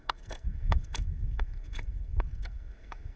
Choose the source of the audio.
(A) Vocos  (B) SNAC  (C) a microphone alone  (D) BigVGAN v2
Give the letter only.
B